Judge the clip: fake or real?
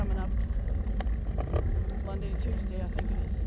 real